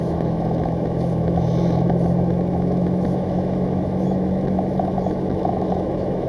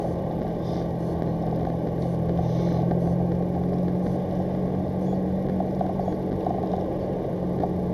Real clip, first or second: second